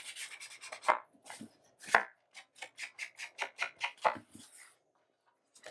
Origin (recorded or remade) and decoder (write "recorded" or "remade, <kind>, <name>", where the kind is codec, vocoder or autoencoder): recorded